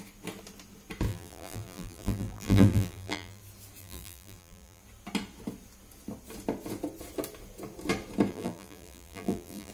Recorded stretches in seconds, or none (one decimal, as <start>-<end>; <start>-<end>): 0.0-1.1; 3.4-3.8; 4.8-8.3